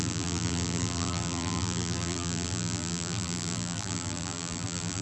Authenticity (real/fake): fake